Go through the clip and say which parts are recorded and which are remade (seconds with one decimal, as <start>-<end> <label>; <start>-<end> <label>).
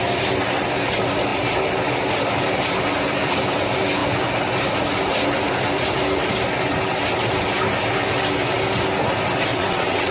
0.0-9.5 recorded; 9.5-10.1 remade